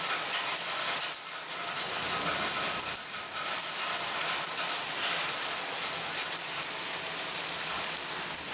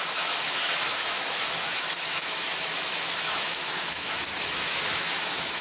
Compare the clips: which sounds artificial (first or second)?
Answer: second